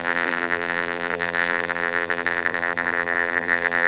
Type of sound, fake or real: fake